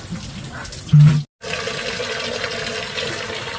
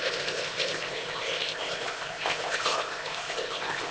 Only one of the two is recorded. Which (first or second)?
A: first